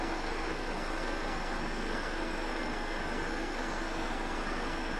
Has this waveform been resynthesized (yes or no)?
yes